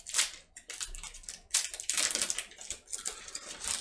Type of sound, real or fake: real